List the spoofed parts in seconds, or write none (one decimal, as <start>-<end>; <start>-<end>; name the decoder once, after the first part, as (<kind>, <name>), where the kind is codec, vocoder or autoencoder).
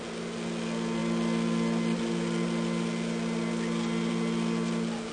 none